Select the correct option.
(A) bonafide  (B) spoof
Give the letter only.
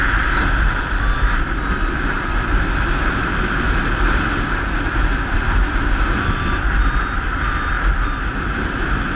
A